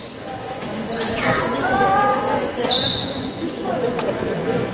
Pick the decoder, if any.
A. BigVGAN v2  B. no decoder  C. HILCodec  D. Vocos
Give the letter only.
D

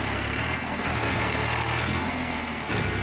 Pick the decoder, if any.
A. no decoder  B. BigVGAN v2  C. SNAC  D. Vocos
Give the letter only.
C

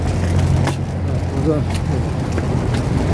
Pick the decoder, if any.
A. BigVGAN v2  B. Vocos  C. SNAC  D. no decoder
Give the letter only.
D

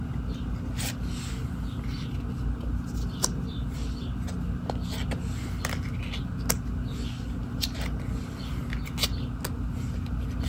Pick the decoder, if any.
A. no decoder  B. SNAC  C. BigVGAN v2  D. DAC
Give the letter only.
A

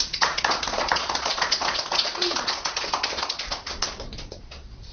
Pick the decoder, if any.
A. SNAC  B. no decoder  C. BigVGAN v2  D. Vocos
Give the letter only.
D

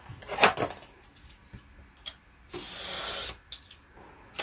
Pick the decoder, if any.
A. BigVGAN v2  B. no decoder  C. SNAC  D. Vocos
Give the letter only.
B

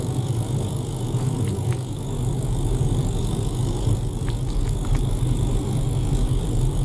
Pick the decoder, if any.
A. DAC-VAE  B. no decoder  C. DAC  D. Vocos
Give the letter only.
C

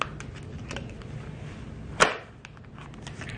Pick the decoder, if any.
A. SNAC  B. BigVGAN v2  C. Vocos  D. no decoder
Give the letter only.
D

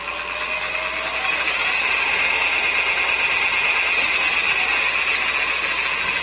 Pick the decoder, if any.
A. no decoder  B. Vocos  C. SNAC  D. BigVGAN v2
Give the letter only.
A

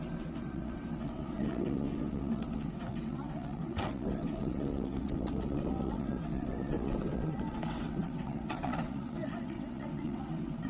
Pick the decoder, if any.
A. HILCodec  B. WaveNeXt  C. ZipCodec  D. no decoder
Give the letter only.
B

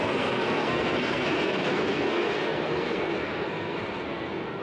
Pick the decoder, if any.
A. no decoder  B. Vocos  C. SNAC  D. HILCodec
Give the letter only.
C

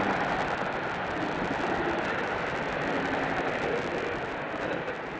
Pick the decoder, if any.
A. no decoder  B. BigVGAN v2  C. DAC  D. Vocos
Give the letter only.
A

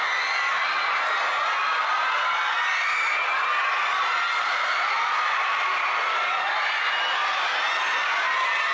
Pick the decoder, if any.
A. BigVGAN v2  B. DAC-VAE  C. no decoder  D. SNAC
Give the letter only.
C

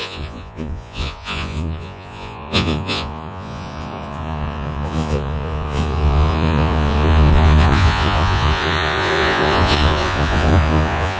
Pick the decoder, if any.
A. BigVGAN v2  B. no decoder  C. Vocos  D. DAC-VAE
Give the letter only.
C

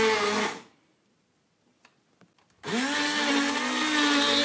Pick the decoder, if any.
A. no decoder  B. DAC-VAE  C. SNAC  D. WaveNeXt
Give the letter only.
A